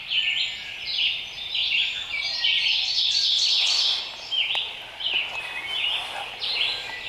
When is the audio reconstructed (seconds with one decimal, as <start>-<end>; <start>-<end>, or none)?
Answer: none